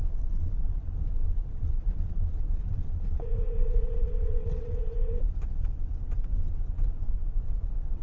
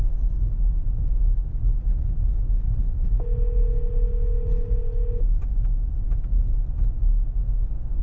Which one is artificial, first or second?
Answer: first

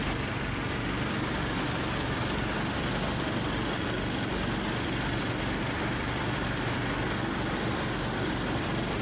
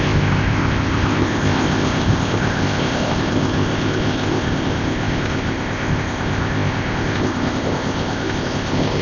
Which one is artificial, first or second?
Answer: second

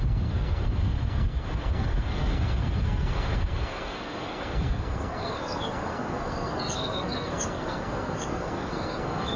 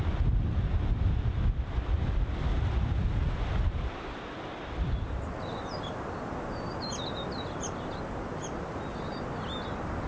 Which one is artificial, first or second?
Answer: first